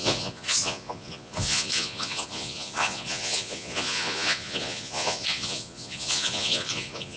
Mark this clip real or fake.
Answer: fake